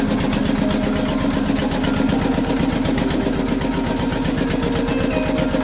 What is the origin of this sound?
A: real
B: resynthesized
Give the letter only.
A